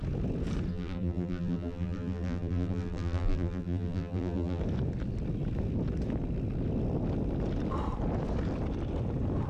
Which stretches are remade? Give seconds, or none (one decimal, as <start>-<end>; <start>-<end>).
0.7-4.6